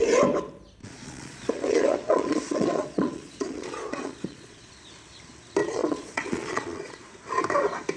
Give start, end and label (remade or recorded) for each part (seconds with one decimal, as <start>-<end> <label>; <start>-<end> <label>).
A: 0.0-0.8 recorded; 0.8-4.7 remade; 4.7-5.6 recorded; 5.6-7.1 remade; 7.1-8.0 recorded